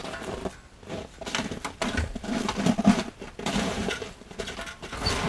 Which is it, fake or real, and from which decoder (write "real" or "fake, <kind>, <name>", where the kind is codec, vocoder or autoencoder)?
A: real